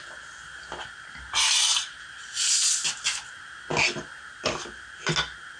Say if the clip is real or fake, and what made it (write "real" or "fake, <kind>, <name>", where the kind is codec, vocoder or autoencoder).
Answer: real